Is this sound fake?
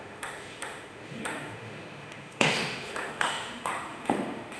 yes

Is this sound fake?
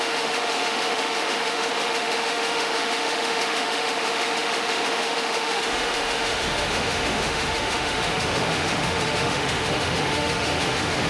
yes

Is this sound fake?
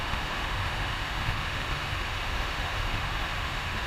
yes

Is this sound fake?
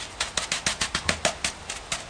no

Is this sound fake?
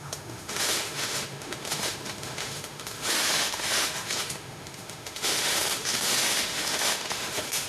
yes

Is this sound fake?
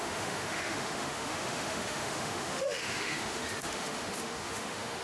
yes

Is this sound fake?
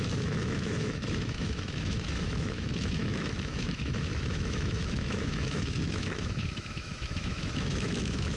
yes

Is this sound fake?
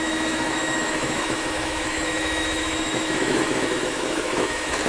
yes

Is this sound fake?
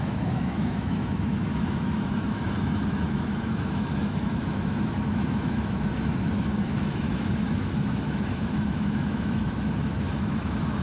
yes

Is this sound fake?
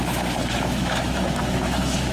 yes